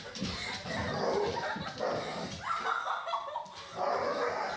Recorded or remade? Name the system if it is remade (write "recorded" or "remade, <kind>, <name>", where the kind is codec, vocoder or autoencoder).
recorded